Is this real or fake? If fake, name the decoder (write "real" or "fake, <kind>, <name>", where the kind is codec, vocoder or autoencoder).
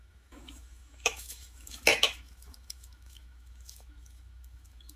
fake, autoencoder, DAC-VAE